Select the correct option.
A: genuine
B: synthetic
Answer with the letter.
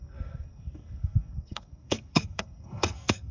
B